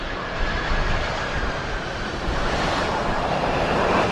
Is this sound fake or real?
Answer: fake